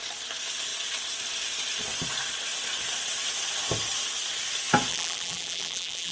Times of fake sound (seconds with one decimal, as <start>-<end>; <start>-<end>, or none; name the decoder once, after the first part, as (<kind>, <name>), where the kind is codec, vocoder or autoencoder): 4.9-6.1 (vocoder, BigVGAN v2)

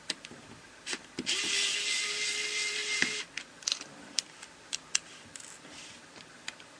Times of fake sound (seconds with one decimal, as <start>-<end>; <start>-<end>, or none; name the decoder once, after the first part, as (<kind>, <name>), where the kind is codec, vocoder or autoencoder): 0.0-6.8 (vocoder, BigVGAN v2)